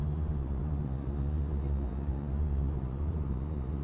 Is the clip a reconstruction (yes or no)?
yes